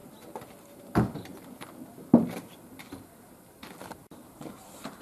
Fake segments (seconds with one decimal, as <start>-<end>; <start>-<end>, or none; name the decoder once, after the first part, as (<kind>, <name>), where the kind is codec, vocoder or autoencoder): 4.0-5.0 (vocoder, BigVGAN v2)